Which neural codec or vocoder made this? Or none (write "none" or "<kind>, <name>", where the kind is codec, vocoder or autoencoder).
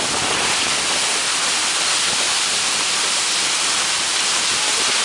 none